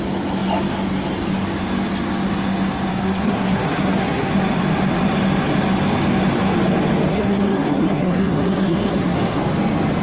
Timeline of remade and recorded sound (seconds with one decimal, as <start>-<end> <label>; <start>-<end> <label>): 0.0-2.9 recorded; 2.9-4.3 remade; 4.3-7.1 recorded; 7.1-9.4 remade; 9.4-10.0 recorded